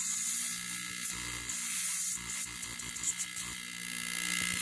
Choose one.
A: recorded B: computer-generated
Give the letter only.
A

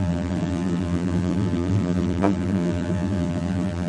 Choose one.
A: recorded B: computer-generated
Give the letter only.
B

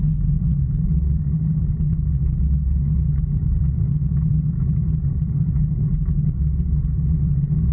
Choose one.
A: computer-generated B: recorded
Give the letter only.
B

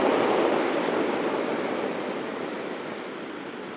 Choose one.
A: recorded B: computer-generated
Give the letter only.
A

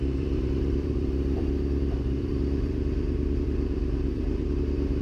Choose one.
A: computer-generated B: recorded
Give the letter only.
A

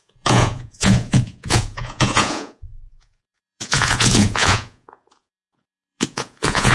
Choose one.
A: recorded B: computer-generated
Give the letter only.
B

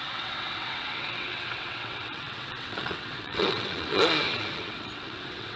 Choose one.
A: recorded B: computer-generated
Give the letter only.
B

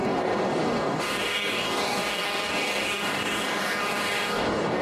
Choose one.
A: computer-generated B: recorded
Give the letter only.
A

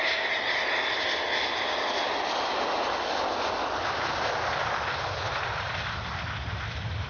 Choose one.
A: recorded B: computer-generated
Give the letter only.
A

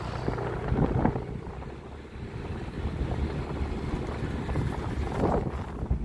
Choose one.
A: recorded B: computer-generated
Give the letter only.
A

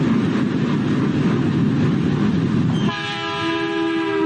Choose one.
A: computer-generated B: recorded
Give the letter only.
B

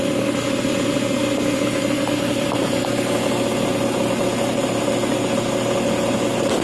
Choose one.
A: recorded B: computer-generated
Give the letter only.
A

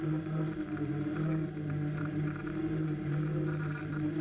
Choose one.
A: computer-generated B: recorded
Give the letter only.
A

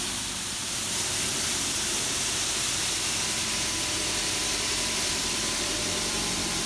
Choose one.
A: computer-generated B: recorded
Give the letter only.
A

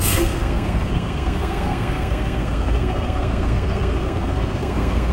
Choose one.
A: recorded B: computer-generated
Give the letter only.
B